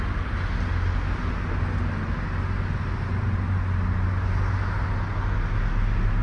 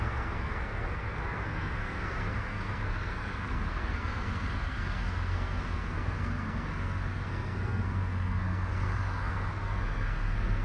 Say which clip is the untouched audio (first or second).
first